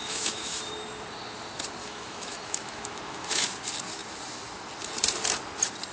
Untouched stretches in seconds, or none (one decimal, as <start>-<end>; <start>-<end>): 0.6-1.8; 3.5-5.9